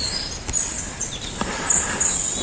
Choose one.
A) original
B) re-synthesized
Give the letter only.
A